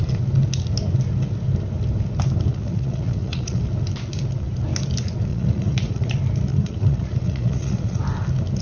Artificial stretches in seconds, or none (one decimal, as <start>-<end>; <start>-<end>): 2.5-3.6; 5.3-6.1; 6.5-8.0